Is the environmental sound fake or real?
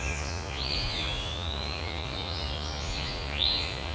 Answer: fake